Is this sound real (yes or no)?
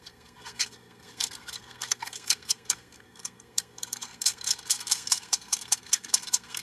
no